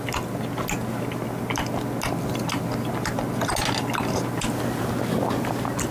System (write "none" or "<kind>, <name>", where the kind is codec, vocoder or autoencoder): none